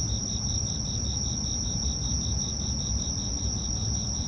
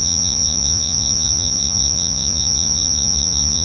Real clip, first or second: first